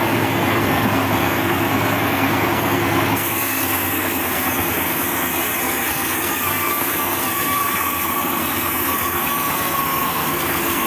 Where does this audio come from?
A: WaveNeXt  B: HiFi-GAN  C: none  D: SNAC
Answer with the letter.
D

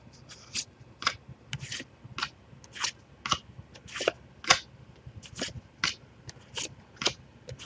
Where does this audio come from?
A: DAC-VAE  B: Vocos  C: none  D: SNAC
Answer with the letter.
C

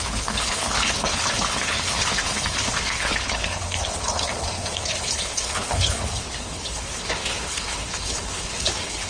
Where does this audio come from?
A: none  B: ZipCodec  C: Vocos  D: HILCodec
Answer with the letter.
D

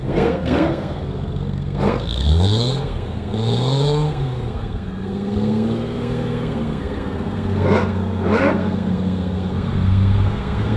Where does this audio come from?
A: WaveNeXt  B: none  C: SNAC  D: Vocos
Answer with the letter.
C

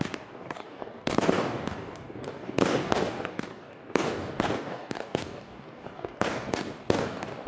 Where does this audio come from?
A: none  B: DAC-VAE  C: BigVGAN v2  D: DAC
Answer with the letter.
D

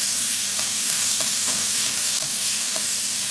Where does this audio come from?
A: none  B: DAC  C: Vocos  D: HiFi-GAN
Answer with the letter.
B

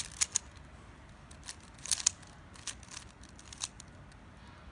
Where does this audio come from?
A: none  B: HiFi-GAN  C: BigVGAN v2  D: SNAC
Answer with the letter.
C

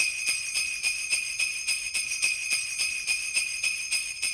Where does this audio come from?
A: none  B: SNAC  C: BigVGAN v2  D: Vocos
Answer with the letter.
C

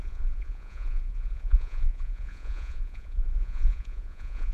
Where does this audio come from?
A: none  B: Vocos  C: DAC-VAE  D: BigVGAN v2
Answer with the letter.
B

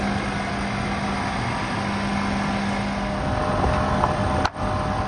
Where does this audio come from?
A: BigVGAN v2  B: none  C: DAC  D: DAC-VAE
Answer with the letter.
B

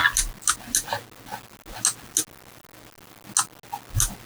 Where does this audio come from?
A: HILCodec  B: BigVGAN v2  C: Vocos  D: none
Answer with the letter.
D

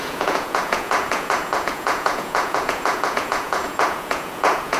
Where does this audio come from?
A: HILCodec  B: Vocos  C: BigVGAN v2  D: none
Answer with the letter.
B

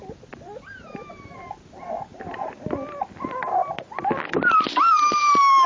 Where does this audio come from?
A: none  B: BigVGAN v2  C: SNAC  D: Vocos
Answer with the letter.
A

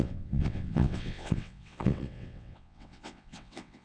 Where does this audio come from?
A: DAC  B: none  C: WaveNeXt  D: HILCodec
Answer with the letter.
C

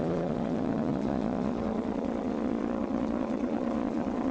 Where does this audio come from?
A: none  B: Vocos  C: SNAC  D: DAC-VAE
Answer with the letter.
B